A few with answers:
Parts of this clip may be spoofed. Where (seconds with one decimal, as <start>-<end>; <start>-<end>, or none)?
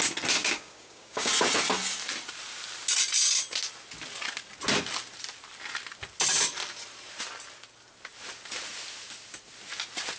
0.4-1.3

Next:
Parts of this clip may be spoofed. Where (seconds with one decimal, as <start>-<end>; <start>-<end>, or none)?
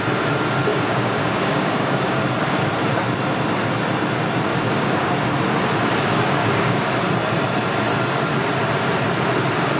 0.7-2.2; 4.5-5.1; 6.4-6.9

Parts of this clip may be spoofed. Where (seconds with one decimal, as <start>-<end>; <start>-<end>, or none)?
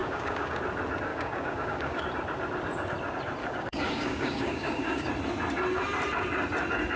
0.0-0.6; 1.1-2.0; 3.4-5.1